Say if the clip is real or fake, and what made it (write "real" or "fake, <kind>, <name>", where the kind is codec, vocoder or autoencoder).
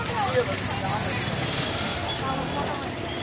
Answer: real